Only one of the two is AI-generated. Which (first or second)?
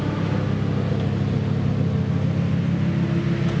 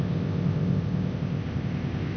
second